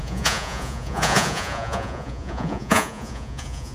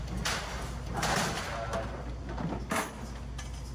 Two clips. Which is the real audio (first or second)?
second